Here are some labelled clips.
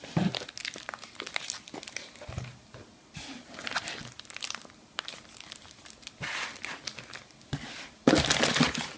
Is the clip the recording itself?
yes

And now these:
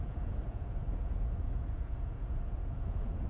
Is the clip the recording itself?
no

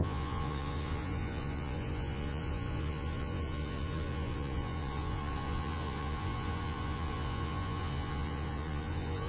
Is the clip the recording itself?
no